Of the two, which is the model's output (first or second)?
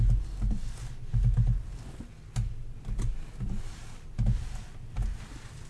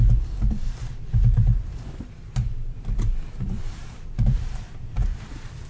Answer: second